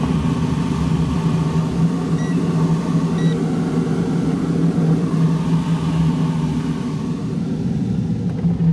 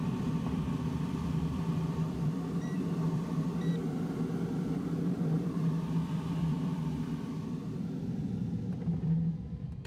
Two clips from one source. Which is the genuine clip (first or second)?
first